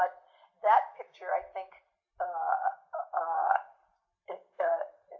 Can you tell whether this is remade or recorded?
recorded